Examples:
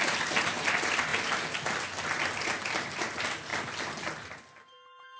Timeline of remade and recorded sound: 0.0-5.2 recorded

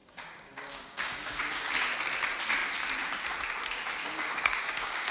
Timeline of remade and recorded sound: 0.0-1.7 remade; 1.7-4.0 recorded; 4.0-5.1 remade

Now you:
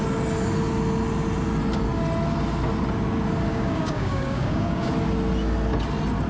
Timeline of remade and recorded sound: 0.0-3.5 recorded; 3.5-4.9 remade; 4.9-6.3 recorded

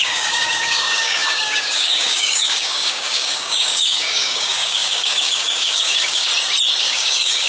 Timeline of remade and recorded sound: 0.0-6.3 remade; 6.3-6.8 recorded; 6.8-7.5 remade

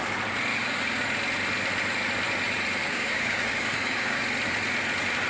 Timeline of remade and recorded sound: 0.0-0.5 recorded; 0.5-1.0 remade; 1.0-2.8 recorded; 2.8-4.2 remade; 4.2-5.3 recorded